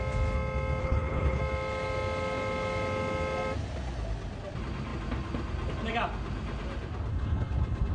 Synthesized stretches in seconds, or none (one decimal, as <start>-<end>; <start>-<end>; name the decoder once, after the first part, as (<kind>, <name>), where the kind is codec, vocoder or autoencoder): 0.8-1.4 (codec, HILCodec); 7.1-7.9